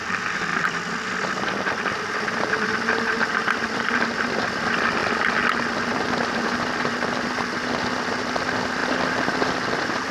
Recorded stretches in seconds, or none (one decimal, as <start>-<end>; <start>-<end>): 0.0-0.5; 4.4-5.0; 7.7-10.1